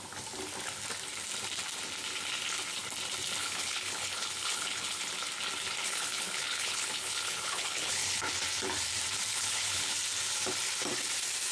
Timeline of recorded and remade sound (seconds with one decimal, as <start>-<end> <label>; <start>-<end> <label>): 0.0-3.4 recorded; 3.4-5.0 remade; 5.0-5.8 recorded; 5.8-8.3 remade; 8.3-9.3 recorded; 9.3-9.9 remade; 9.9-11.5 recorded